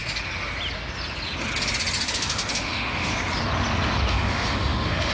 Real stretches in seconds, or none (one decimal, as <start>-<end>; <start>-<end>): 0.0-2.1; 3.1-4.1

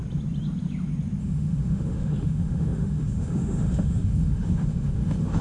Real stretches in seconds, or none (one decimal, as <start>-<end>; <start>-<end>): 0.0-1.2

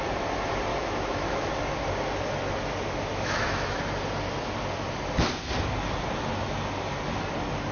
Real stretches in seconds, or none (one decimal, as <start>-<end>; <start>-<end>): 0.0-0.7; 1.5-3.1; 3.8-7.7

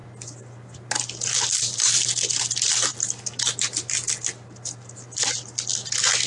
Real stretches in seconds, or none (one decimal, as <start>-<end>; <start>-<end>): 0.0-6.3

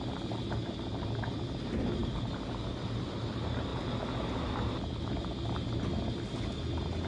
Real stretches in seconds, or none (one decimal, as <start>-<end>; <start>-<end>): 0.0-7.1

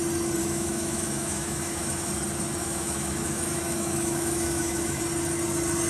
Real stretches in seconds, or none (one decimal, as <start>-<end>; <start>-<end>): 0.0-0.4; 2.1-2.6; 5.0-5.9

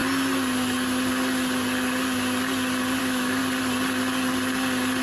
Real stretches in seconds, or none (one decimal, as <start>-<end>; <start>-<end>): 0.0-3.0; 3.4-5.0